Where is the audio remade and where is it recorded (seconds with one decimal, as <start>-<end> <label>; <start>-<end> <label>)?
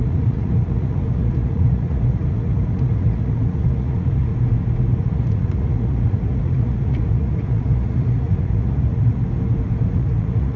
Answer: 0.0-4.3 remade; 4.3-5.0 recorded; 5.0-9.2 remade; 9.2-9.9 recorded; 9.9-10.6 remade